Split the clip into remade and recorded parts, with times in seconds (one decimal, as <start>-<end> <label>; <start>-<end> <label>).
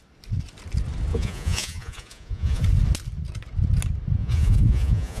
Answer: 0.0-1.1 recorded; 1.1-2.6 remade; 2.6-4.2 recorded; 4.2-5.2 remade